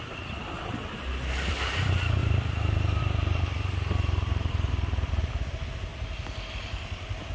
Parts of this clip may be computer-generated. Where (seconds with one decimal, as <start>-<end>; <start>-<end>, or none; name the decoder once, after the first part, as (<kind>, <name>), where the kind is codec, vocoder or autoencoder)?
0.0-5.9 (vocoder, BigVGAN v2); 6.5-7.3